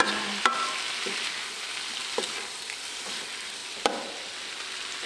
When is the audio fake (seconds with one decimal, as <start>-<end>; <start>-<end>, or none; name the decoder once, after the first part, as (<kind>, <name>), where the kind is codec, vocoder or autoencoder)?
none